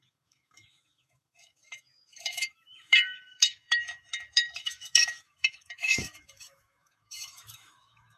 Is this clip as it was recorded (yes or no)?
no